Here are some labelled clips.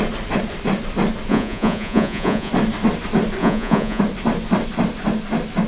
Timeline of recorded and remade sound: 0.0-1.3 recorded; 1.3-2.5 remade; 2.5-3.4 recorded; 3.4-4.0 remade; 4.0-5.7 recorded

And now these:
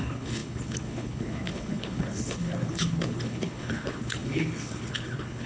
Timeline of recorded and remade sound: 0.0-5.5 remade